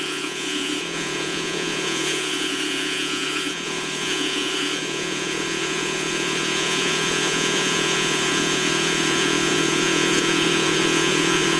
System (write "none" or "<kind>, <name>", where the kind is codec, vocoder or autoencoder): vocoder, Vocos